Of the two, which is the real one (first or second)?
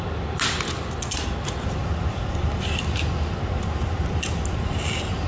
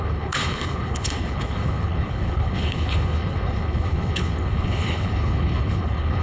first